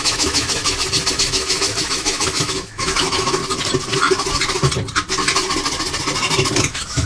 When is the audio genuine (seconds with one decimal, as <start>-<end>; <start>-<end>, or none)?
0.6-1.1; 3.4-6.6